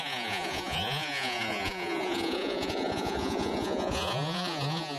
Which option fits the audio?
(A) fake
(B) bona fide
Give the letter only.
A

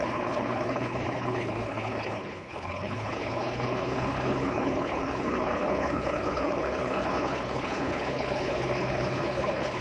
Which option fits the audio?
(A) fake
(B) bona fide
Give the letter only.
A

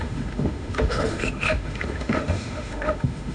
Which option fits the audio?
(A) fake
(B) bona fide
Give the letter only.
A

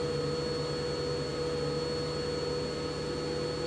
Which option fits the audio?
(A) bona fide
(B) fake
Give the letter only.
A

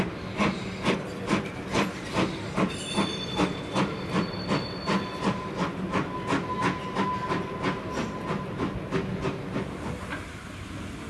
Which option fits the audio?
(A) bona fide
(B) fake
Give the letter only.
A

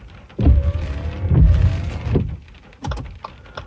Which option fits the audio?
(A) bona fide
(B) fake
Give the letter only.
A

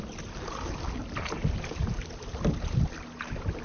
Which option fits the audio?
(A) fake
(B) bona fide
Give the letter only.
B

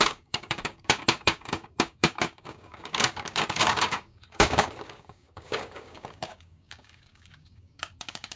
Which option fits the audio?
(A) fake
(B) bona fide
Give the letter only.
A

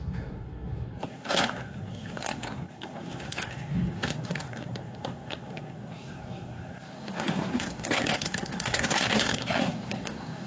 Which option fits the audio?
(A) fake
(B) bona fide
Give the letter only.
A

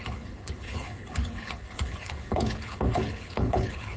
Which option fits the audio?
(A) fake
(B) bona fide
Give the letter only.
A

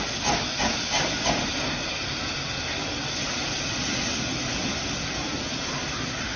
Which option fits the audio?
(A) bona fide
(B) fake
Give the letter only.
A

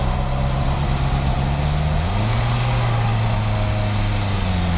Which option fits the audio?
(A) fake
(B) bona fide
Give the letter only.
B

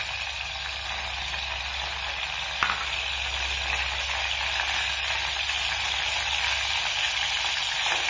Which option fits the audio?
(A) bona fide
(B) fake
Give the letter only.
A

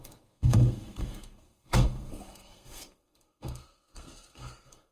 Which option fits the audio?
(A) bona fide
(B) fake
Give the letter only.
B